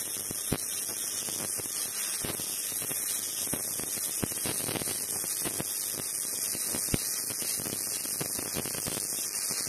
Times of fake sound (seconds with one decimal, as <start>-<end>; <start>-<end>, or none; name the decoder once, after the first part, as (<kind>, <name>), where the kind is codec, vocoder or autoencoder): none